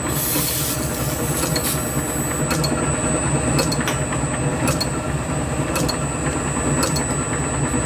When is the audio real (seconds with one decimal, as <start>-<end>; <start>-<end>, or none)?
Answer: 0.0-4.5; 5.9-7.9